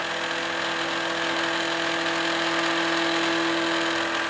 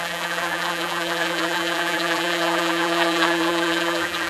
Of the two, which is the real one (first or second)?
first